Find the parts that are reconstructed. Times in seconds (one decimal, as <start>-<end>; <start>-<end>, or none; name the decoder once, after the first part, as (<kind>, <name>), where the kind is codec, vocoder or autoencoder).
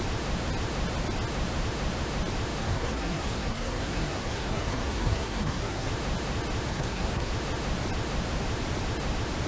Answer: 2.6-5.9 (codec, SNAC); 6.7-7.3